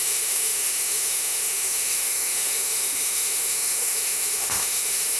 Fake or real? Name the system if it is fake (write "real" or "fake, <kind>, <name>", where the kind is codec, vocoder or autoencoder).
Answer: fake, autoencoder, DAC-VAE